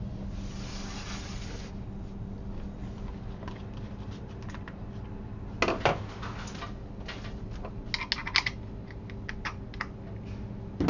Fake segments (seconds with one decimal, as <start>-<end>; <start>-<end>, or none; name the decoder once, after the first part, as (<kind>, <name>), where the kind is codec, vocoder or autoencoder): none